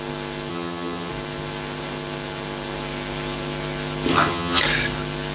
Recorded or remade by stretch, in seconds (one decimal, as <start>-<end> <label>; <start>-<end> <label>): 0.0-0.5 recorded; 0.5-1.1 remade; 1.1-4.1 recorded; 4.1-4.6 remade; 4.6-5.3 recorded